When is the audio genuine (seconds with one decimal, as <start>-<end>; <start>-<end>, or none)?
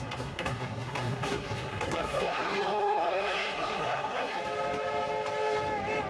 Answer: 4.4-6.1